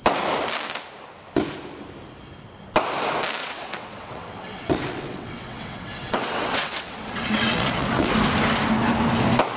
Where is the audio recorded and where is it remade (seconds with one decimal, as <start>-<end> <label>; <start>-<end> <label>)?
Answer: 0.0-3.4 recorded; 3.4-8.1 remade; 8.1-9.6 recorded